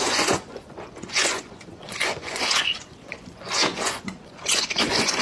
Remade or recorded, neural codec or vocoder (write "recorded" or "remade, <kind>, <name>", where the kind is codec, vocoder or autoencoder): remade, vocoder, Vocos